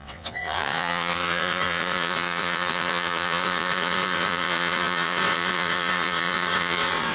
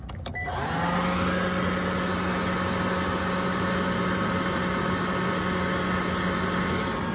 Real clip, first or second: second